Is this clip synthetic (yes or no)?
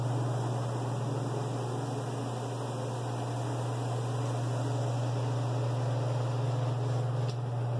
no